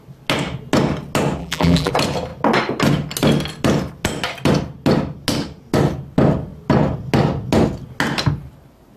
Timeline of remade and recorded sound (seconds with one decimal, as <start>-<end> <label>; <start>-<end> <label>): 0.0-1.4 recorded; 1.4-1.9 remade; 1.9-9.0 recorded